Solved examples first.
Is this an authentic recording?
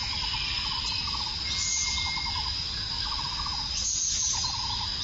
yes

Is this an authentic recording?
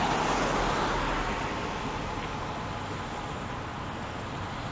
yes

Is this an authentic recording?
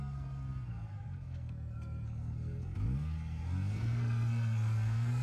no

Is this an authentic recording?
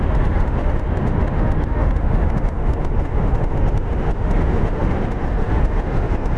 no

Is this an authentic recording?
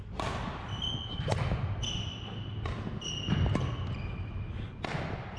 yes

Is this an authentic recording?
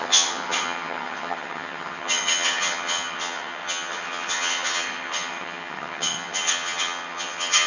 no